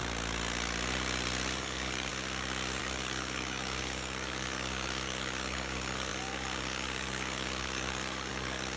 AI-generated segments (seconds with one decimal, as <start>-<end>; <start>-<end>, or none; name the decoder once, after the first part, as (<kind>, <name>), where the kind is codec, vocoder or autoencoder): 1.6-2.1 (codec, DAC); 2.8-8.8